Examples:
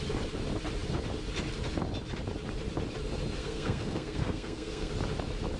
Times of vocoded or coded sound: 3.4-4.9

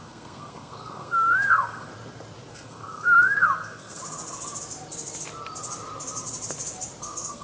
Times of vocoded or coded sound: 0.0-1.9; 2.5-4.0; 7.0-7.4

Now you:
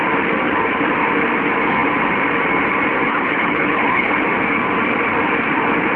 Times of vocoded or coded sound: 3.1-4.1

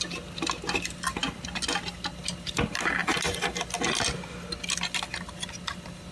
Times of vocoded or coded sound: none

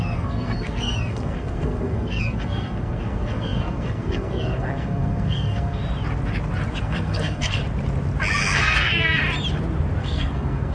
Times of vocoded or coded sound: 0.0-5.8; 6.8-7.6; 8.4-9.2; 10.0-10.7

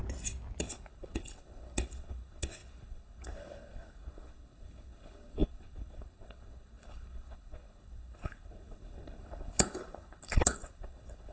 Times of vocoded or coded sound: 0.6-11.3

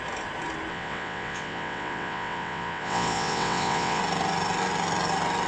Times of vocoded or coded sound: 0.7-4.0